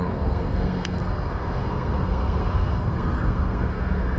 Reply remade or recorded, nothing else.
remade